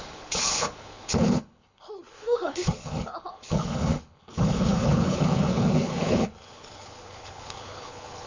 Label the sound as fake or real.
fake